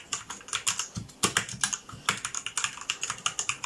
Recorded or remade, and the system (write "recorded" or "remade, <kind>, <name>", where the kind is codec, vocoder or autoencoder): recorded